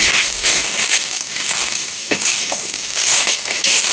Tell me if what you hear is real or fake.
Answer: fake